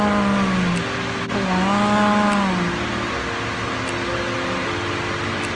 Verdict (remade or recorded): recorded